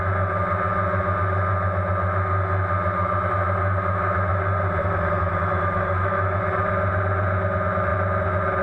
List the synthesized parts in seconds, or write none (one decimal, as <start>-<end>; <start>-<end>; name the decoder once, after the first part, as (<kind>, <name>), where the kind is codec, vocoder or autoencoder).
4.8-6.4 (autoencoder, DAC-VAE)